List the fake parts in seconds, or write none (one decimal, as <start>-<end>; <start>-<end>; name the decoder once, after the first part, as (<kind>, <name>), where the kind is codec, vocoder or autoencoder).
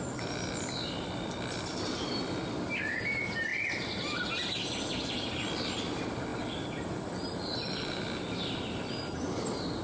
none